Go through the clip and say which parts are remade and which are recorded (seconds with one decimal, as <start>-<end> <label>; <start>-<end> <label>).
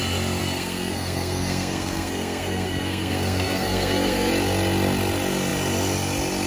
0.0-0.4 recorded; 0.4-4.3 remade; 4.3-6.5 recorded